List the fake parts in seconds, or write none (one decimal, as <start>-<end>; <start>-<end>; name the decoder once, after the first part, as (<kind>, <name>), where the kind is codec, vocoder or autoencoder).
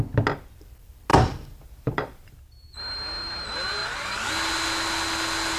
1.1-2.8 (vocoder, BigVGAN v2); 3.8-4.3